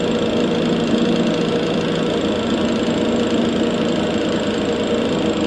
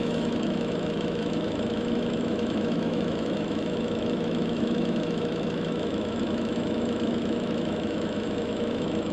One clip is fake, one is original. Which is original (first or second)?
first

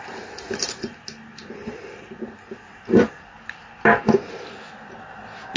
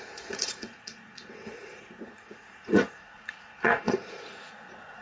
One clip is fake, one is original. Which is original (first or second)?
first